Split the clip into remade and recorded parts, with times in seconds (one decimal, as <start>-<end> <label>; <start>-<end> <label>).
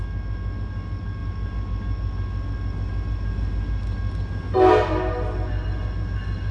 0.0-6.5 recorded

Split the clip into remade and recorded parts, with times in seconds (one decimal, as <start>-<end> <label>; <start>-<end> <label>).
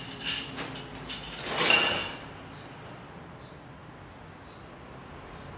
0.0-5.6 recorded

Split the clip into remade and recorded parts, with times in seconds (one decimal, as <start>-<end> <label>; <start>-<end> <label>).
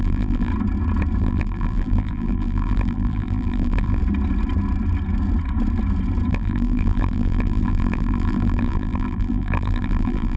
0.0-0.5 remade; 0.5-1.2 recorded; 1.2-4.0 remade; 4.0-6.3 recorded; 6.3-10.4 remade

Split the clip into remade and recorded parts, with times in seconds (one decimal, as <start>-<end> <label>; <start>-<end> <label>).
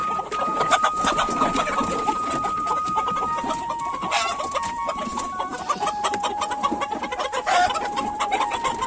0.0-1.0 recorded; 1.0-2.7 remade; 2.7-3.9 recorded; 3.9-8.9 remade